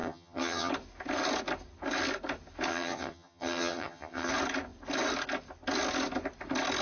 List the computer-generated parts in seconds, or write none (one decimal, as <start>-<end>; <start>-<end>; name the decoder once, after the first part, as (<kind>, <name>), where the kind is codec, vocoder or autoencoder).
0.0-0.7 (vocoder, HiFi-GAN); 2.7-4.3